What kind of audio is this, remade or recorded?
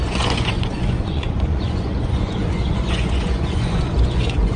remade